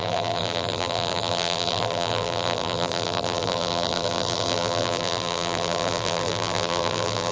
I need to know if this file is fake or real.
fake